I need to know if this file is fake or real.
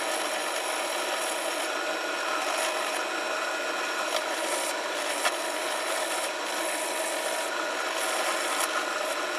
real